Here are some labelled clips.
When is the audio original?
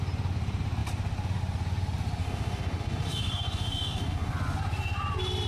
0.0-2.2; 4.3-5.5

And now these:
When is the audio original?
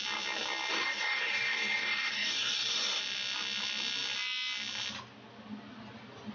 0.0-0.7; 3.0-6.3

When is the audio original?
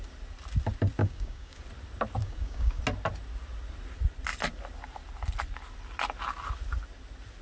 0.0-1.0; 1.6-2.2; 2.8-7.4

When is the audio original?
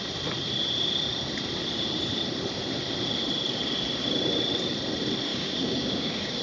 0.0-5.3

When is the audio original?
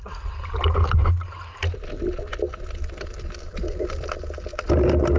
0.0-5.2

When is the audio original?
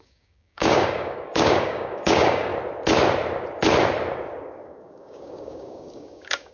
2.5-4.4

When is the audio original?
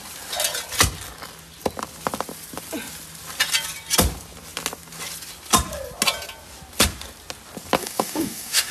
0.0-7.8